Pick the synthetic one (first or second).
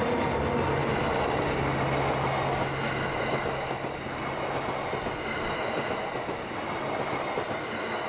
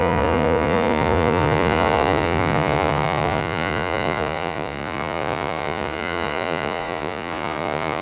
second